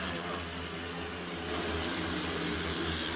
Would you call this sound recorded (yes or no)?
yes